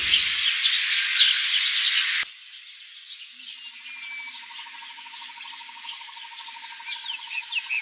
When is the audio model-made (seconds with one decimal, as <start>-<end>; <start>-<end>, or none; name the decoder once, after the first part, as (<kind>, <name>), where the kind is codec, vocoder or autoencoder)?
none